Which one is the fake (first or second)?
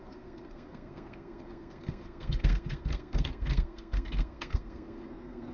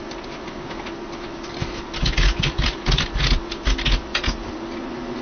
first